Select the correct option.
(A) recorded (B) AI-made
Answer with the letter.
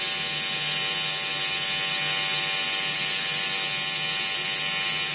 A